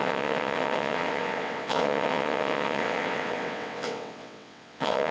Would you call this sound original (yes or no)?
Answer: no